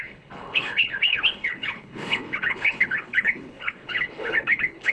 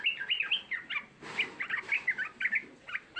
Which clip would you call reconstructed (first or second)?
first